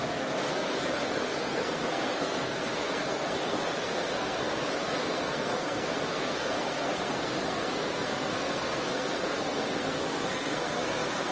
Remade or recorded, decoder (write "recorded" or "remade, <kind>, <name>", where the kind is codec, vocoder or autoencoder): remade, codec, SNAC